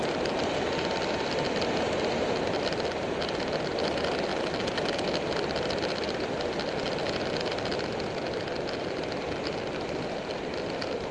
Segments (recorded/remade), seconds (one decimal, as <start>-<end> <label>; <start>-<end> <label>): 0.0-11.1 recorded